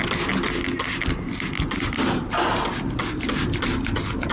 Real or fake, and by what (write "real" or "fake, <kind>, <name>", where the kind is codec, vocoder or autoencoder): real